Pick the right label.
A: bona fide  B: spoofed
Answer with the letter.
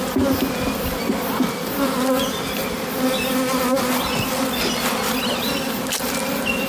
A